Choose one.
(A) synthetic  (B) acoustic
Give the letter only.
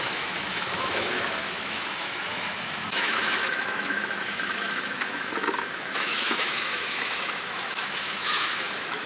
A